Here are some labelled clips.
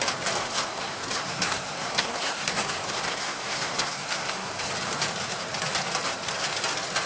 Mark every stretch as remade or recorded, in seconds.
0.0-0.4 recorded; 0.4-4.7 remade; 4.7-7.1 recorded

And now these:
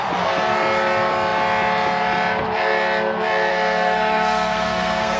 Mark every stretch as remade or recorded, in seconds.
0.0-3.5 recorded; 3.5-5.2 remade

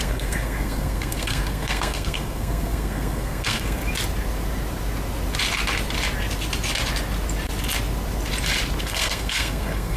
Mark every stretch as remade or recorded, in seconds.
0.0-3.8 remade; 3.8-8.8 recorded; 8.8-10.0 remade